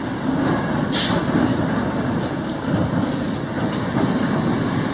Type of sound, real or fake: real